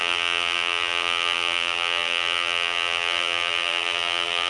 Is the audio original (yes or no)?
no